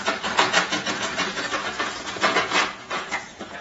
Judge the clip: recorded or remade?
remade